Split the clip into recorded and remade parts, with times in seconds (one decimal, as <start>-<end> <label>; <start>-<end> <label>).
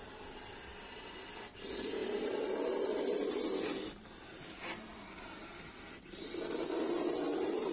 0.0-2.0 recorded; 2.0-3.0 remade; 3.0-4.9 recorded; 4.9-6.2 remade; 6.2-7.7 recorded